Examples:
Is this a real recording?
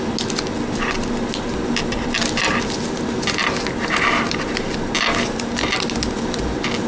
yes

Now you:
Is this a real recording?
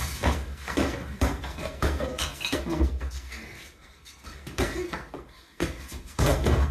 no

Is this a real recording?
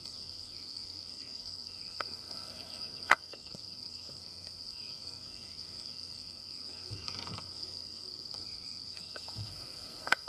no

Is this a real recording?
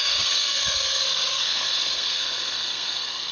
no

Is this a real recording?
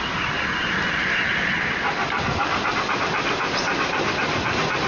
yes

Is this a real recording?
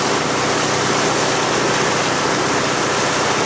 yes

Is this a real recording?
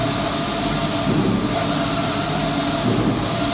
yes